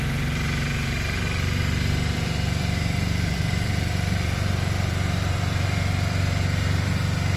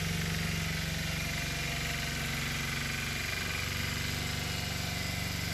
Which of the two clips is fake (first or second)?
first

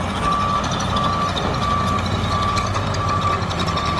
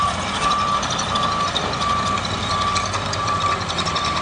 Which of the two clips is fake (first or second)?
second